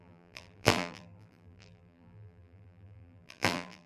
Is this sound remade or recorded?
remade